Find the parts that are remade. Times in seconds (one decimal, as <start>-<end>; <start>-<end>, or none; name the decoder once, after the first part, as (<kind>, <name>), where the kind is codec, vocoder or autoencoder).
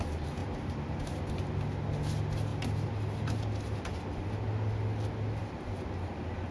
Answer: 0.4-1.5 (vocoder, BigVGAN v2); 2.5-3.8; 5.4-6.5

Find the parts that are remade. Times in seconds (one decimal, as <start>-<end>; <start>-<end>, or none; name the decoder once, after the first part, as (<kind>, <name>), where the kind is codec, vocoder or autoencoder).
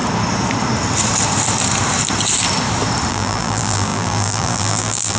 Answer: 3.1-5.2 (vocoder, BigVGAN v2)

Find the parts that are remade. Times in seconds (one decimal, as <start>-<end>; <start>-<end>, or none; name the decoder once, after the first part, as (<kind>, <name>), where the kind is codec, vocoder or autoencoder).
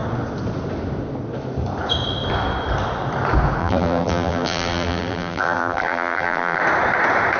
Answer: 3.6-6.6 (vocoder, BigVGAN v2)